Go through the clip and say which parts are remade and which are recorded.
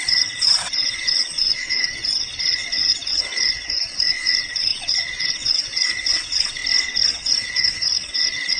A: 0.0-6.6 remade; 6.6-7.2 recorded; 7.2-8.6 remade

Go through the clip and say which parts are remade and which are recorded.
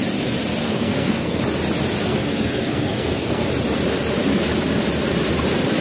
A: 0.0-0.6 recorded; 0.6-1.4 remade; 1.4-2.1 recorded; 2.1-3.5 remade; 3.5-5.8 recorded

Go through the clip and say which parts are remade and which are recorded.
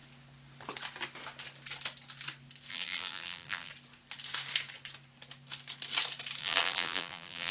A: 0.0-2.7 recorded; 2.7-3.7 remade; 3.7-6.4 recorded; 6.4-7.5 remade